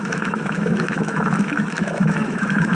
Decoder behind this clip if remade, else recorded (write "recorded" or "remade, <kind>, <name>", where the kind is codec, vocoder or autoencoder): remade, autoencoder, DAC-VAE